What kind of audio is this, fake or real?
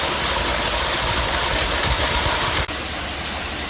real